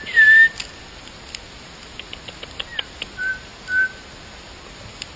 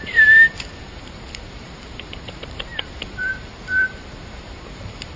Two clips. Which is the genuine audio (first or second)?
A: first